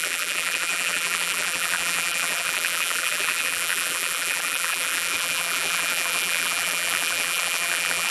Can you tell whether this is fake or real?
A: fake